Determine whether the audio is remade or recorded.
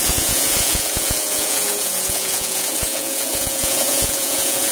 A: remade